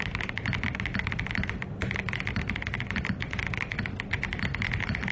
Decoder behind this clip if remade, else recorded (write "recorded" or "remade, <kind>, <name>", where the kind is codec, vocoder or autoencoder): recorded